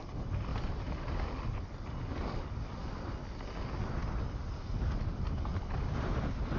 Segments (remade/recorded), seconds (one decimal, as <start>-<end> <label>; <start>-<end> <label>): 0.0-0.5 recorded; 0.5-2.8 remade; 2.8-4.0 recorded; 4.0-5.0 remade; 5.0-5.5 recorded; 5.5-6.6 remade